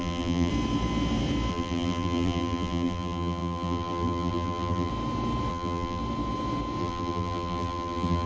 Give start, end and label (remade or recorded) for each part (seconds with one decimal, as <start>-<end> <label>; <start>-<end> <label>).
0.0-0.5 remade; 0.5-1.5 recorded; 1.5-4.9 remade; 4.9-5.5 recorded; 5.5-6.0 remade; 6.0-6.8 recorded; 6.8-8.3 remade